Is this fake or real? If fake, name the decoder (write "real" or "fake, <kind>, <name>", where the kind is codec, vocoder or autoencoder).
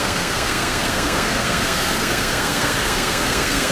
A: fake, codec, SNAC